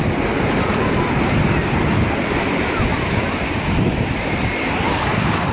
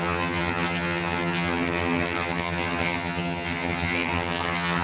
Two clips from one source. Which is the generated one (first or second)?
second